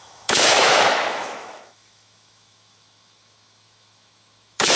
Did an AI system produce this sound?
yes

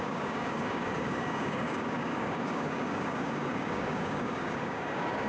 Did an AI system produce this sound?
yes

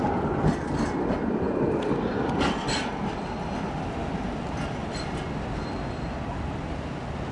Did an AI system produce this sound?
no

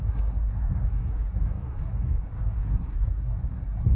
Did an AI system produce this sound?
yes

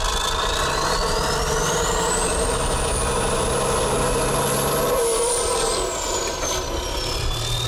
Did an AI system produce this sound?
no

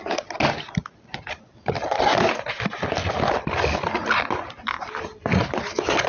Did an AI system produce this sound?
no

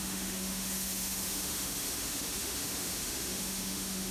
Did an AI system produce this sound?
yes